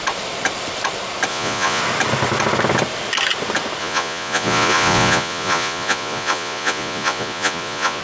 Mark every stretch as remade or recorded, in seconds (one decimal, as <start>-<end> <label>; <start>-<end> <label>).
0.0-1.3 recorded; 1.3-1.8 remade; 1.8-3.8 recorded; 3.8-8.0 remade